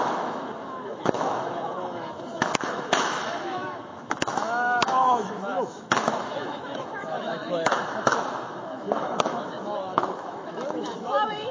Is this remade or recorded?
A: remade